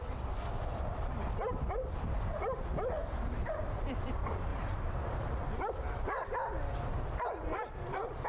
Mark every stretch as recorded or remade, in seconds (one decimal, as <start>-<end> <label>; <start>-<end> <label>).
0.0-3.0 recorded; 3.0-4.1 remade; 4.1-4.5 recorded; 4.5-5.7 remade; 5.7-8.3 recorded